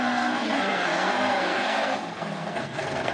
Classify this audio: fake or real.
fake